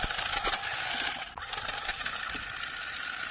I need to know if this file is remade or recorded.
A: recorded